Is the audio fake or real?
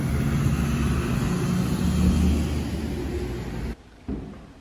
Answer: real